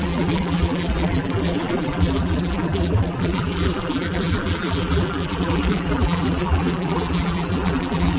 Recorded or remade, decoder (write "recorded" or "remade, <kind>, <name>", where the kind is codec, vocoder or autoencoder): remade, vocoder, BigVGAN v2